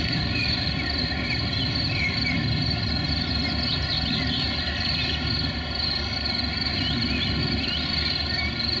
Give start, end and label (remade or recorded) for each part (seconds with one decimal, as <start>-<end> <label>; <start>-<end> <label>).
0.0-8.8 recorded